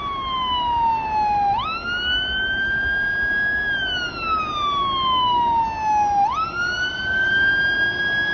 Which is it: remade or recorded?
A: recorded